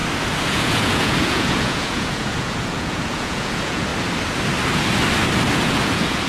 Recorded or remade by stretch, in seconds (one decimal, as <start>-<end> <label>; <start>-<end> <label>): 0.0-0.5 recorded; 0.5-3.9 remade; 3.9-5.5 recorded; 5.5-6.3 remade